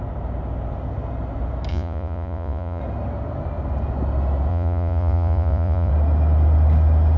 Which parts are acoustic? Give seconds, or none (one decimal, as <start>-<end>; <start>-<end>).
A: 0.0-1.7; 2.8-4.5; 5.9-7.2